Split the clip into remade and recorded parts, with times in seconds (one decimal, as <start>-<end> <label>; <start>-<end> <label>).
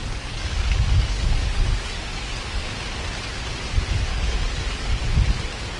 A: 0.0-2.7 remade; 2.7-4.1 recorded; 4.1-5.0 remade; 5.0-5.8 recorded